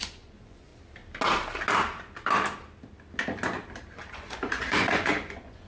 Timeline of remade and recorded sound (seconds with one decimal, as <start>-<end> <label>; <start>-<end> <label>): 0.0-0.7 remade; 0.7-4.1 recorded; 4.1-5.7 remade